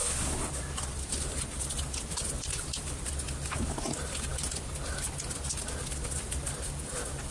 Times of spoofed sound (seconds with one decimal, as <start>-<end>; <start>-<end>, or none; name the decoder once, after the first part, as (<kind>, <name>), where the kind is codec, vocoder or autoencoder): none